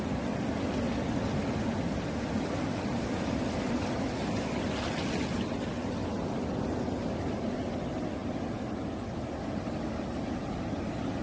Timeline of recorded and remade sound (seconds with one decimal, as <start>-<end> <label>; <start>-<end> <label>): 0.0-11.2 recorded